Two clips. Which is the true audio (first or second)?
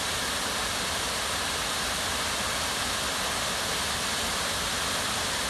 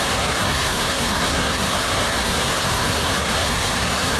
first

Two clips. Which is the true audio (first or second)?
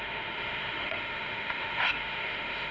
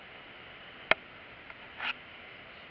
second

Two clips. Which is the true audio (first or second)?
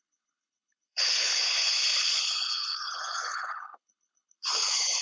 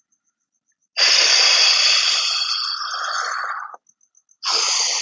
second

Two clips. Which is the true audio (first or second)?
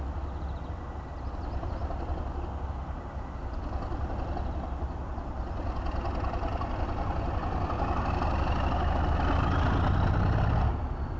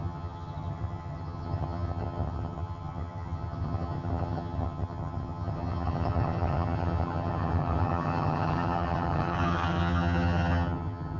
first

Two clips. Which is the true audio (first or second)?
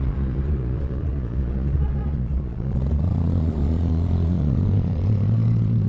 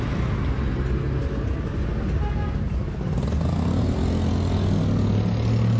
second